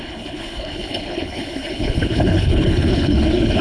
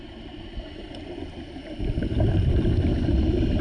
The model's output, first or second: first